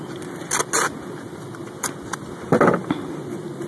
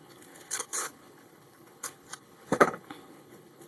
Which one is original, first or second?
first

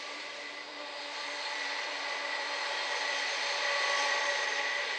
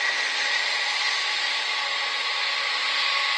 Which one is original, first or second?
second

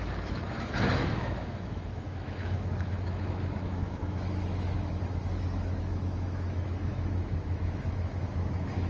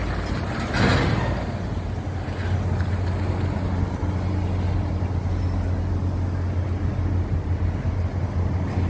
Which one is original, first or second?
second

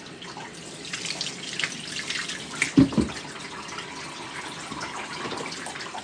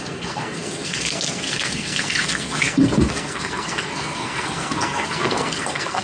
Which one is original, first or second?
first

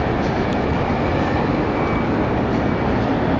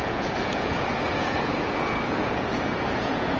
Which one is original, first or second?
first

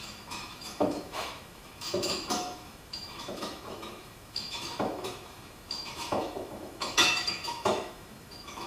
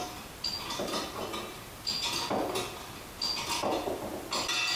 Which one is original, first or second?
second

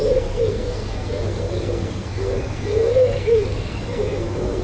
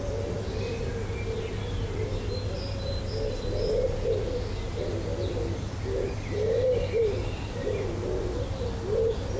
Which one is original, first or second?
second